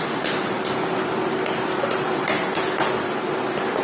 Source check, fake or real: real